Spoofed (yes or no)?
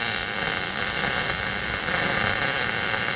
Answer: no